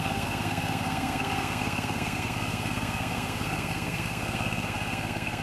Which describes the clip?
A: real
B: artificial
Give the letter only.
B